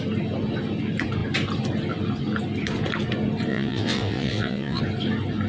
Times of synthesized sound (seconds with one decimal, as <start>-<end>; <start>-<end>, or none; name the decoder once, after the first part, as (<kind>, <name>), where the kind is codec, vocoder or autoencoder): 3.5-4.8 (vocoder, WaveNeXt)